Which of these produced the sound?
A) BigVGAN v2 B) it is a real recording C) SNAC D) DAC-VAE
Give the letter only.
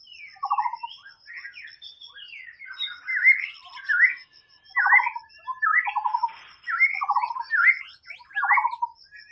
B